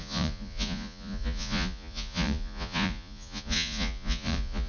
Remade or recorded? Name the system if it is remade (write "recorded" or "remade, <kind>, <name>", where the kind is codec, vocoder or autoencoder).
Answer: remade, vocoder, Vocos